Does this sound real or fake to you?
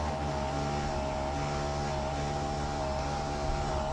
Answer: real